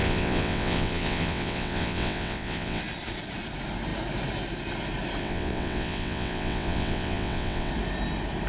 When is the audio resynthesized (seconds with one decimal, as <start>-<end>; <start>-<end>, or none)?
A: 0.0-2.8; 5.2-7.7